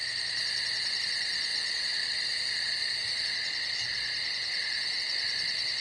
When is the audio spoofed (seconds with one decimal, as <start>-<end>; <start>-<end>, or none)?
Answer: none